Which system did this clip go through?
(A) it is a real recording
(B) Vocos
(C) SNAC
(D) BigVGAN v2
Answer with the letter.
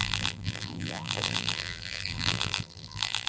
D